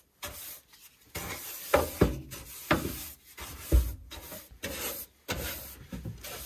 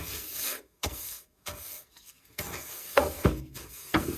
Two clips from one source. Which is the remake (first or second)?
second